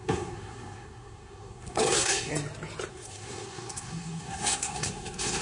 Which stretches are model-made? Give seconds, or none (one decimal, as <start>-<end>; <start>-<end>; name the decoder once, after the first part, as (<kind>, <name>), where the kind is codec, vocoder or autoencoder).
0.0-2.3 (codec, SNAC); 2.9-5.4